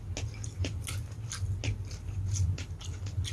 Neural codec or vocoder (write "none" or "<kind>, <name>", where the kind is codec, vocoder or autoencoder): none